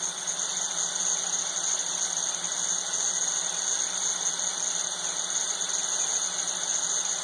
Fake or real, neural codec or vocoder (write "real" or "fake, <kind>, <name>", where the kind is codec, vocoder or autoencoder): real